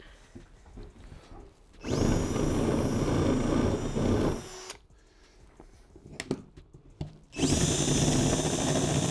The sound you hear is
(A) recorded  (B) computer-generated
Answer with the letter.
A